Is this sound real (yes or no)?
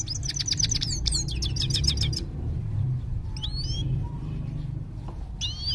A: yes